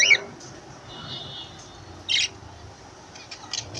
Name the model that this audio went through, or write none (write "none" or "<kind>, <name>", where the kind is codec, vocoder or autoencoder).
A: none